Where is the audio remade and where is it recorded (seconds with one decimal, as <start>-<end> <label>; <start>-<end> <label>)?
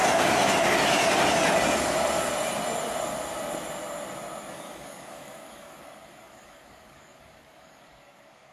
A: 0.0-4.5 recorded; 4.5-8.5 remade